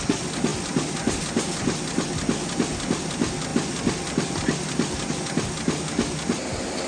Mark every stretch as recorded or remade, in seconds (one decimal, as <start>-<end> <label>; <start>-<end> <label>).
0.0-0.5 recorded; 0.5-1.2 remade; 1.2-6.9 recorded